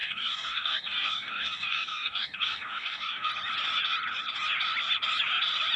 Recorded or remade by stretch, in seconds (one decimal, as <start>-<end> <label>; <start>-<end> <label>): 0.0-3.3 remade; 3.3-5.8 recorded